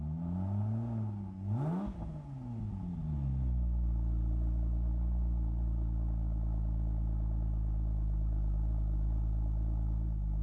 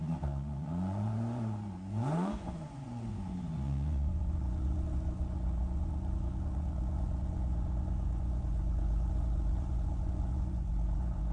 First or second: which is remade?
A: second